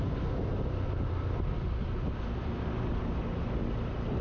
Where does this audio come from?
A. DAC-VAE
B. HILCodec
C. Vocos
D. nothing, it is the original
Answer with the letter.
D